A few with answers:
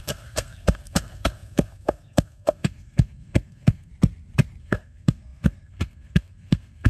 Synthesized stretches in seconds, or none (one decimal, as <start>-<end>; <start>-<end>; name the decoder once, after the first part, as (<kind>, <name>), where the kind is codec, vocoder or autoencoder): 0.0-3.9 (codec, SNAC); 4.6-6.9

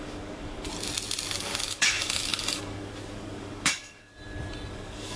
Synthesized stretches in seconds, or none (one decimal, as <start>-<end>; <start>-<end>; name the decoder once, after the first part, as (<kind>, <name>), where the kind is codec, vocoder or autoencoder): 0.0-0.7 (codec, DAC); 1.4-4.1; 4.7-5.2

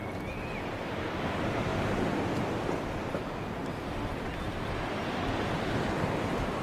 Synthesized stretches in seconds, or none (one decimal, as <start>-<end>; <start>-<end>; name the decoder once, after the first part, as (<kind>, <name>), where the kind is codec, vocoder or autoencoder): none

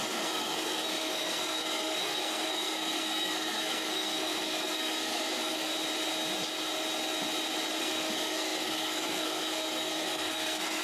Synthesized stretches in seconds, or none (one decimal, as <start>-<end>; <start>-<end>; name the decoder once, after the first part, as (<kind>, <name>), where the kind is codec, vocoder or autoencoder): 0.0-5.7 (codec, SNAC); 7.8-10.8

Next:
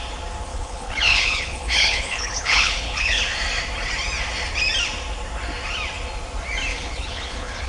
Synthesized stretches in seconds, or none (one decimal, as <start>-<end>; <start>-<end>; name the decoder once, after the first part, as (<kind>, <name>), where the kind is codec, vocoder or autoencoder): 0.5-3.2 (codec, HILCodec); 6.7-7.7